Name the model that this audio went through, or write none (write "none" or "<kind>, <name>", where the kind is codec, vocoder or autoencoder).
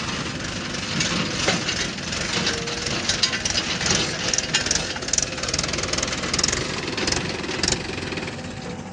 none